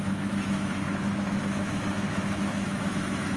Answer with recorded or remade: remade